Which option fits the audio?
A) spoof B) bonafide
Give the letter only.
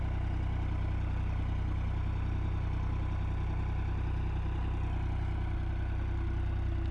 B